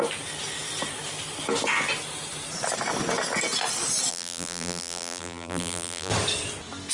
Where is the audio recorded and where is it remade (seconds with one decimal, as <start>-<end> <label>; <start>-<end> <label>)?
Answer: 0.0-4.1 recorded; 4.1-6.1 remade; 6.1-6.9 recorded